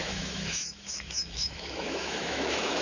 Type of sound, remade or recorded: remade